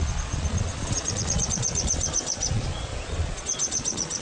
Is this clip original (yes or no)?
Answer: no